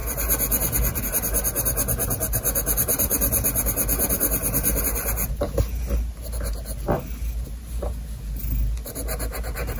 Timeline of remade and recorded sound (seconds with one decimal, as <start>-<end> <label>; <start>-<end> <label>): 0.0-9.8 recorded